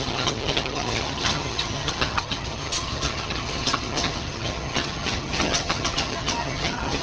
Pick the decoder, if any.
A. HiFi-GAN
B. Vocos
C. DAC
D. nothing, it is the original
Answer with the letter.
A